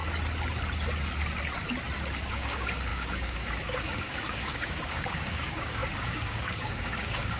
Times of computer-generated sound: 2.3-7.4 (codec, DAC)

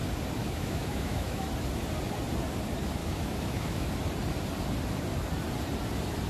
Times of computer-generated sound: 0.4-1.5 (autoencoder, DAC-VAE); 3.0-3.9

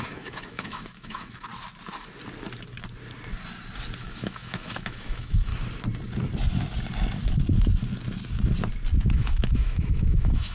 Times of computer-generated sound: 0.0-1.5 (autoencoder, DAC-VAE); 4.0-5.5; 9.0-10.5

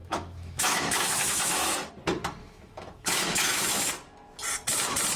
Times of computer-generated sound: 0.0-1.9 (autoencoder, DAC-VAE); 2.4-3.9

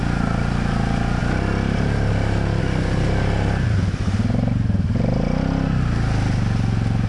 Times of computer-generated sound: none

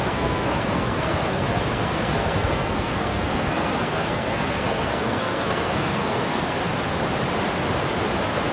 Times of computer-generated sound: 0.0-6.6 (codec, SNAC)

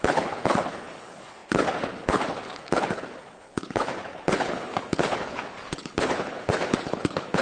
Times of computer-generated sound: 0.0-7.4 (codec, HILCodec)

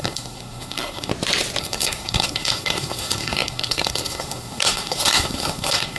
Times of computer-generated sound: 0.0-1.1 (codec, SNAC); 1.6-6.0